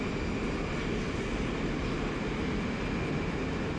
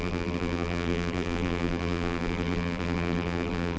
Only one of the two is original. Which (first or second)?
first